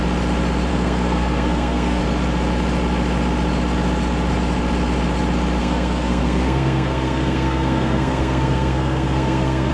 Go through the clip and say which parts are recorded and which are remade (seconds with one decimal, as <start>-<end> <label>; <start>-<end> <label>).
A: 0.0-0.7 recorded; 0.7-2.0 remade; 2.0-5.6 recorded; 5.6-9.7 remade